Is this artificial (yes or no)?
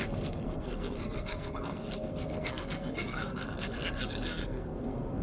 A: yes